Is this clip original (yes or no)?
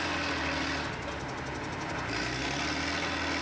yes